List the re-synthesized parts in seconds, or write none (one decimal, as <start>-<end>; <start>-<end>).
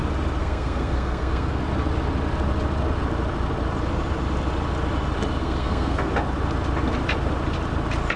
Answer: 0.4-1.6; 5.4-6.1